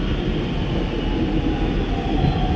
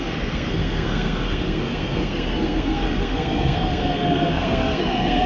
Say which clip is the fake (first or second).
second